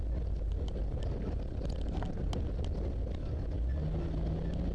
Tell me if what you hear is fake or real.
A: real